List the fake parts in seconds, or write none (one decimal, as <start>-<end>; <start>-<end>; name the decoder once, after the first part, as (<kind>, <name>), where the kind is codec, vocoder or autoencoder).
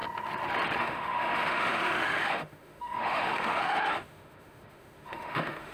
0.8-5.7 (autoencoder, DAC-VAE)